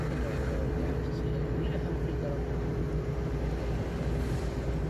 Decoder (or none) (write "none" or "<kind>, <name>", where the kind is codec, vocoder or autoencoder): none